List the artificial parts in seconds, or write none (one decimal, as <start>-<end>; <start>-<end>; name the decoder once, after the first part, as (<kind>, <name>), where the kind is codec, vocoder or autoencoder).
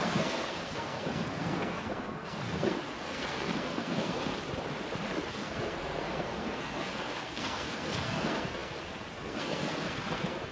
0.0-4.3 (codec, SNAC); 5.3-10.5